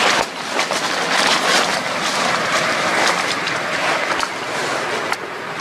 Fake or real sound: real